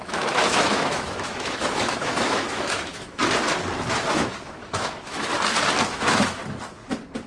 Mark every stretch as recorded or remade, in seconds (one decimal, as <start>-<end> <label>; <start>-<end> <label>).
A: 0.0-3.2 remade; 3.2-4.1 recorded; 4.1-5.3 remade; 5.3-5.9 recorded; 5.9-6.4 remade; 6.4-7.3 recorded